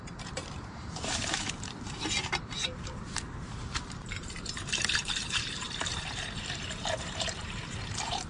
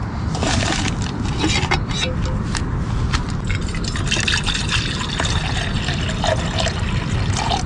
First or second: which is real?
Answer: second